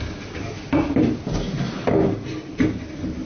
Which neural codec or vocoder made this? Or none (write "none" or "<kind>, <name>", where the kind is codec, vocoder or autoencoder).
none